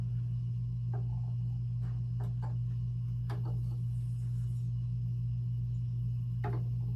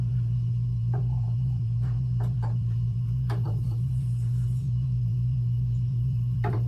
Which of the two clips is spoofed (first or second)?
second